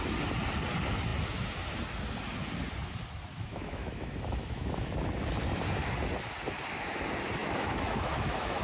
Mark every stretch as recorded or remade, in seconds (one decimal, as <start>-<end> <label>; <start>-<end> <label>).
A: 0.0-3.3 recorded; 3.3-4.9 remade; 4.9-7.4 recorded; 7.4-8.6 remade